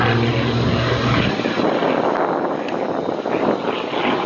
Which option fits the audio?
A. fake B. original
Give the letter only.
B